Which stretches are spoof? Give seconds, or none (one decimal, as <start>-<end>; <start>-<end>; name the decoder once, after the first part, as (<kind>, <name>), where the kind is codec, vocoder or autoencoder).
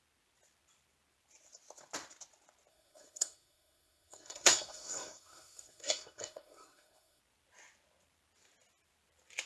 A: 2.7-7.2 (codec, SNAC)